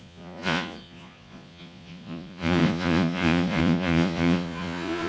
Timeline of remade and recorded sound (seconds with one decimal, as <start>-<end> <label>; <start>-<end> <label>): 0.0-5.1 remade